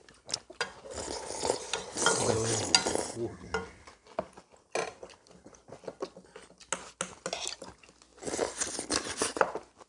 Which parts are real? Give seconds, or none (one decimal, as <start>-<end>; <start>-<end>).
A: 2.2-9.9